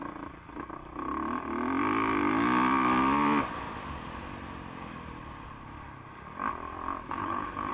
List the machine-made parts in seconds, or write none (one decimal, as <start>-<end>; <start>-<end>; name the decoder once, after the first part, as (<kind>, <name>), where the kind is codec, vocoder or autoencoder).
7.0-7.7 (codec, HILCodec)